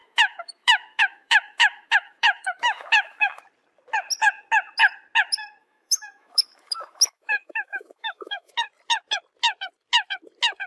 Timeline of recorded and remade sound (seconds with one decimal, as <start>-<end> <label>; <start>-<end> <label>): 0.0-3.4 remade; 3.4-5.6 recorded; 5.6-8.5 remade; 8.5-10.7 recorded